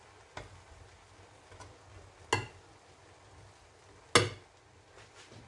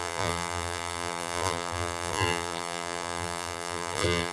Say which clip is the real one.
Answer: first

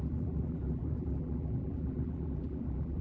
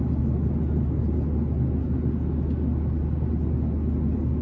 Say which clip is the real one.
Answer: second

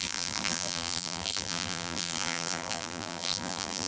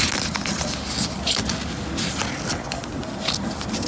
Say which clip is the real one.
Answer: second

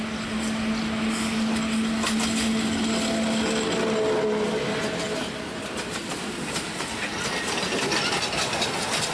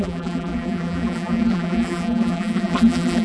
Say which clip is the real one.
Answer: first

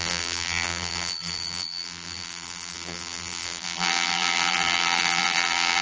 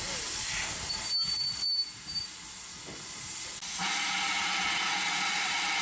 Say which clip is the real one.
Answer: second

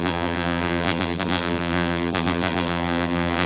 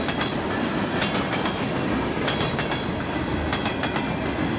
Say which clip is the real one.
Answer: second